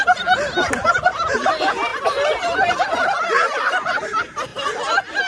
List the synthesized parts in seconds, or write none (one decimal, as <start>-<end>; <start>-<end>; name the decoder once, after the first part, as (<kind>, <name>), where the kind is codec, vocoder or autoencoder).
none